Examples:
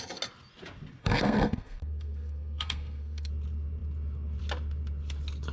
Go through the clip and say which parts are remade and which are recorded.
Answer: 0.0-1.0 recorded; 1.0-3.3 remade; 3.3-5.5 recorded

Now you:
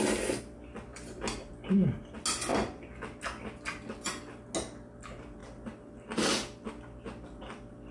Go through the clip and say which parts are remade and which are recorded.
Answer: 0.0-7.9 recorded

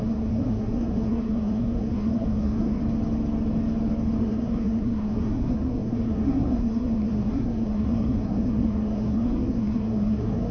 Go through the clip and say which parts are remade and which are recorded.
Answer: 0.0-2.8 remade; 2.8-4.2 recorded; 4.2-10.5 remade

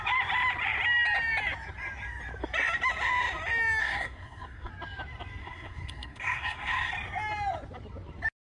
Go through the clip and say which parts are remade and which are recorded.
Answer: 0.0-3.8 recorded; 3.8-4.7 remade; 4.7-5.4 recorded; 5.4-6.9 remade; 6.9-8.5 recorded

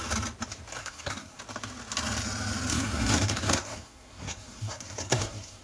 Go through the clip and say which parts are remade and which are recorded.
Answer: 0.0-0.8 recorded; 0.8-1.4 remade; 1.4-2.7 recorded; 2.7-5.6 remade

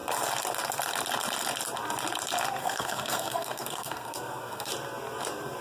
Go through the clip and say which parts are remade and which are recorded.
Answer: 0.0-2.6 recorded; 2.6-4.7 remade; 4.7-5.6 recorded

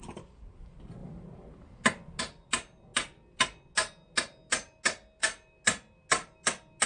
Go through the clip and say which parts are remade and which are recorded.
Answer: 0.0-6.9 recorded